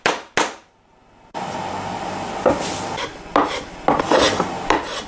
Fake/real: real